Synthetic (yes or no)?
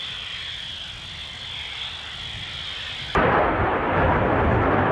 no